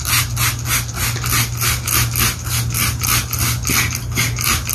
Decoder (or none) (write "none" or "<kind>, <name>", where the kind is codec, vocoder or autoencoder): none